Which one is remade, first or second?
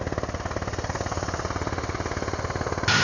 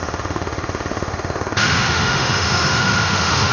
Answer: second